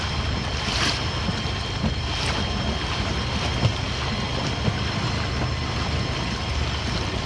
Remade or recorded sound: recorded